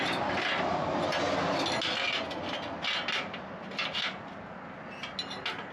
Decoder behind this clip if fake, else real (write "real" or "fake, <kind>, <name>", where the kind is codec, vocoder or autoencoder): real